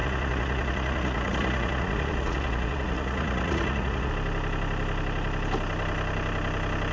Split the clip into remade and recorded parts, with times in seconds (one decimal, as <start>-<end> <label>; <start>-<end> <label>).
0.0-4.1 remade; 4.1-6.9 recorded